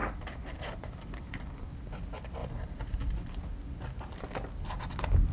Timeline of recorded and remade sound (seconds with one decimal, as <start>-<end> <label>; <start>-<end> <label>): 0.0-1.7 remade; 1.7-2.4 recorded; 2.4-3.3 remade; 3.3-5.3 recorded